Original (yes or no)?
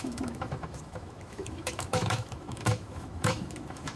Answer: no